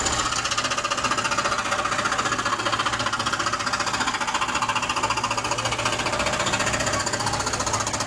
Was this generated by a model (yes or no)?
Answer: no